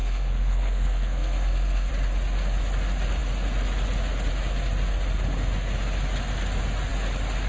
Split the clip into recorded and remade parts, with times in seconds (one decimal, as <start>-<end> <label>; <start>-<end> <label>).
0.0-1.9 remade; 1.9-7.5 recorded